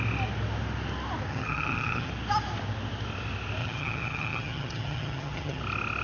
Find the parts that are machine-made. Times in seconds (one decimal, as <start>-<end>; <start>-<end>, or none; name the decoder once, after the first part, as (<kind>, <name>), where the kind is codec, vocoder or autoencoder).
1.3-2.1 (vocoder, HiFi-GAN); 3.6-5.6

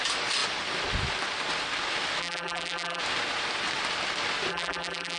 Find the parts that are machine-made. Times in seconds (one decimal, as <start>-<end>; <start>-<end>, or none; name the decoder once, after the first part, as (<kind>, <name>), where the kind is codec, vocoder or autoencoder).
2.2-3.0 (vocoder, BigVGAN v2); 4.5-5.2